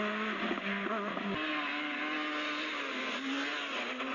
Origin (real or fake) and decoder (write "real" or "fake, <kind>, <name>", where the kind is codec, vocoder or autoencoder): real